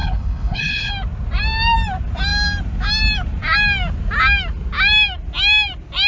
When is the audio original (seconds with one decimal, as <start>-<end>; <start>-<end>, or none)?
0.9-6.1